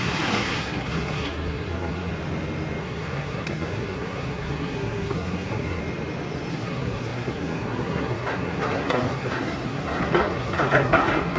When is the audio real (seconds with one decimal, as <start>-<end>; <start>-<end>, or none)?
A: 2.1-2.8; 5.8-6.5

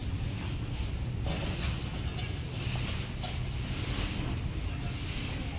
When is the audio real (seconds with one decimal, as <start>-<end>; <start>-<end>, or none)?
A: 0.0-5.6

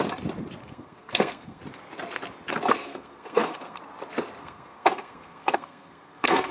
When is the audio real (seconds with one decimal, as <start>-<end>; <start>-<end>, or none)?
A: 0.0-0.6; 1.6-2.8; 3.8-4.4

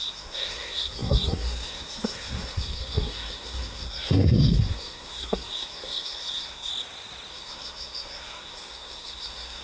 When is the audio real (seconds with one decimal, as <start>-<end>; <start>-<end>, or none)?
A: 6.7-7.3

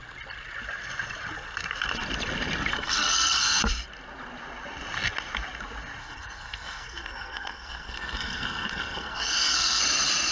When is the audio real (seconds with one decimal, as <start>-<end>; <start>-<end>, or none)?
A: 0.0-2.7; 3.6-6.0; 9.8-10.3

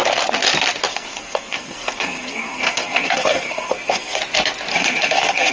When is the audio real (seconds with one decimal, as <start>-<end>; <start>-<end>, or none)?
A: 0.0-0.9; 4.2-4.7

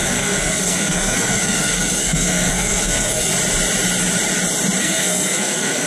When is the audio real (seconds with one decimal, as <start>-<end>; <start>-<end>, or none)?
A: 3.3-4.8

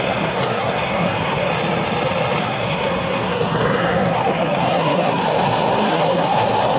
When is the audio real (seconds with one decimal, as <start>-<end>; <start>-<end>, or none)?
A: 1.5-2.4